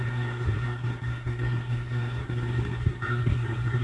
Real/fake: fake